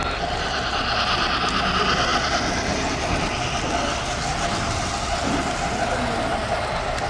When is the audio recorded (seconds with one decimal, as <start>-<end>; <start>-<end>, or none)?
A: 0.0-7.1